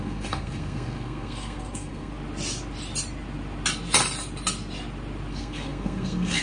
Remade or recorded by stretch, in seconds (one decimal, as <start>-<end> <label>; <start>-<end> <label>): 0.0-2.1 remade; 2.1-5.3 recorded; 5.3-6.4 remade